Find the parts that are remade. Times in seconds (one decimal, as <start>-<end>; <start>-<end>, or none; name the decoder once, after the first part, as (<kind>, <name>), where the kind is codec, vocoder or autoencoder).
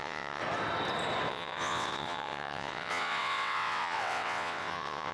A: 0.0-0.4 (vocoder, WaveNeXt); 1.3-5.1